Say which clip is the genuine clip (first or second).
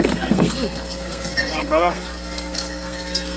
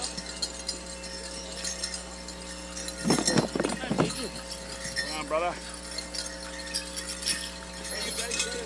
second